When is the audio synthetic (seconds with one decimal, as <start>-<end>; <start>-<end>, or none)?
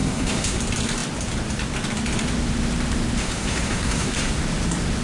0.0-0.6; 3.2-4.3